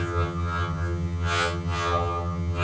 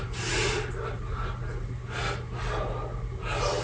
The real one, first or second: second